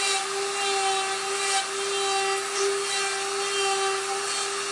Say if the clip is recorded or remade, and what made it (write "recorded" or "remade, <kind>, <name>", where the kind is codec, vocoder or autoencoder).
recorded